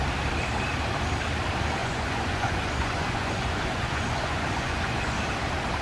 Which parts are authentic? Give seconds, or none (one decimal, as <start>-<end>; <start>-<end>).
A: 0.0-1.8; 5.2-5.8